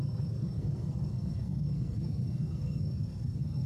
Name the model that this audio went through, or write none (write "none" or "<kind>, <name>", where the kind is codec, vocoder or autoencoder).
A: codec, SNAC